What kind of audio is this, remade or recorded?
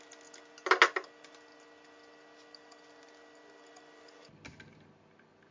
recorded